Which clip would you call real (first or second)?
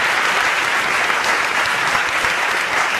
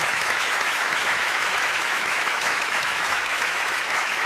first